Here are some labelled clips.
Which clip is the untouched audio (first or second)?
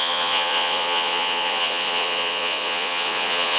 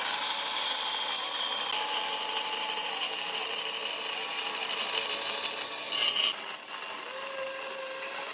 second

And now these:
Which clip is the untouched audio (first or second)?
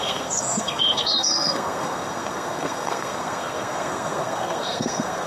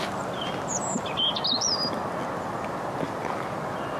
second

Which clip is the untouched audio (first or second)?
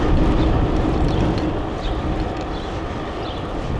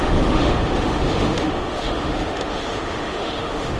first